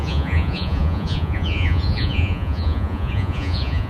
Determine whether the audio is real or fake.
fake